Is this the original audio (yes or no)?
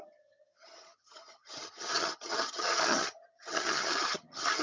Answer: no